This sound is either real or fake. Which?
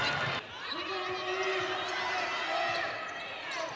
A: real